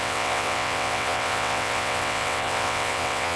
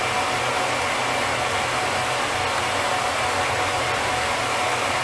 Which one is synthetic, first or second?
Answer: first